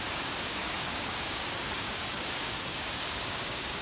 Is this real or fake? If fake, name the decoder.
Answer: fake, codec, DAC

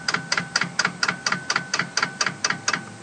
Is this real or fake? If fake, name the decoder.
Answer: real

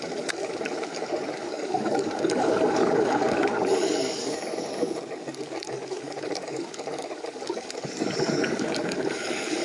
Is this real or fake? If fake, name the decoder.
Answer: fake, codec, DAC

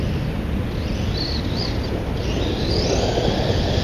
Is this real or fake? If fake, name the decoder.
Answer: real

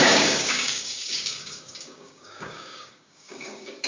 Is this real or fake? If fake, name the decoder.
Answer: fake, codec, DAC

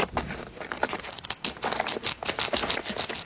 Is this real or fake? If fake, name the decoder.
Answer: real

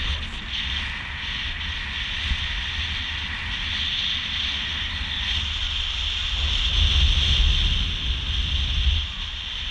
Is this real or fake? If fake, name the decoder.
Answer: real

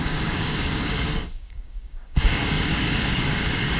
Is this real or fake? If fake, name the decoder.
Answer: fake, codec, DAC